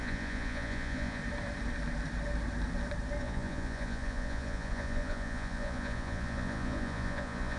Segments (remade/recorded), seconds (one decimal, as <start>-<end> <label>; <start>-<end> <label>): 0.0-1.2 remade; 1.2-3.2 recorded; 3.2-7.6 remade